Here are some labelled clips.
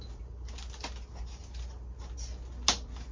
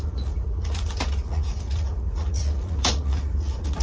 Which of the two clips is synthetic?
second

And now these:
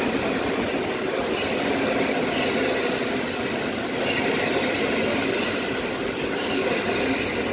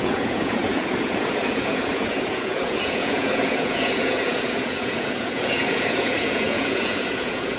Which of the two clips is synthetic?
second